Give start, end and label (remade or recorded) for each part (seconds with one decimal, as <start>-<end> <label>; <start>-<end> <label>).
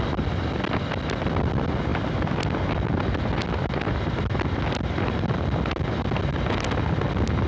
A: 0.0-7.5 recorded